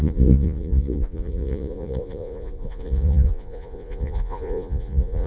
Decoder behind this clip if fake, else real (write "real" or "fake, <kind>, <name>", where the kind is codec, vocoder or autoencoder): fake, vocoder, Vocos